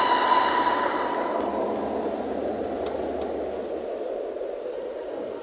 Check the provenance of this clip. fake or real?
real